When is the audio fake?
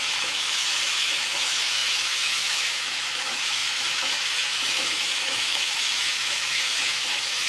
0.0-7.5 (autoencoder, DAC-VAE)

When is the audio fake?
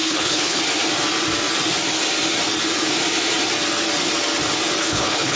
0.0-0.6 (codec, HILCodec); 4.8-5.4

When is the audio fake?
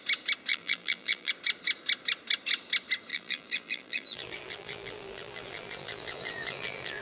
0.5-1.3 (vocoder, BigVGAN v2); 3.1-7.0